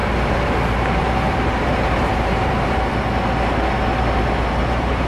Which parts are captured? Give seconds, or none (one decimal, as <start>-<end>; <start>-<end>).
0.0-1.0; 2.9-4.5